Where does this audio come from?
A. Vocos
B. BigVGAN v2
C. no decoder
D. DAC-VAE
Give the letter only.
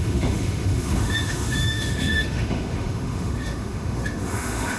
D